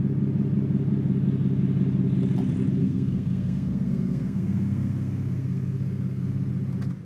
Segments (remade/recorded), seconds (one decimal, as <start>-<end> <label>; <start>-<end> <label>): 0.0-2.8 recorded; 2.8-6.5 remade; 6.5-7.0 recorded